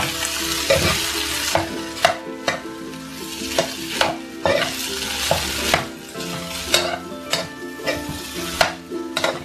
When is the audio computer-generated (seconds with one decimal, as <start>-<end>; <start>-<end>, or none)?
none